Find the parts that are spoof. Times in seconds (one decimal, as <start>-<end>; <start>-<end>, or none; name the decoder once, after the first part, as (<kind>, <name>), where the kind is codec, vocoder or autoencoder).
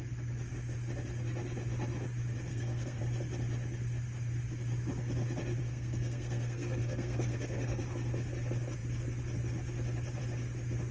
2.5-3.0 (codec, SNAC); 5.6-7.8